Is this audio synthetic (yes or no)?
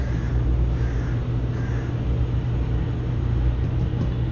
no